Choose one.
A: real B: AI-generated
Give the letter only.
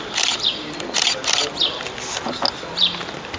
A